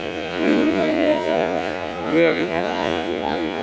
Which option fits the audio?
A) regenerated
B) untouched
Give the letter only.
A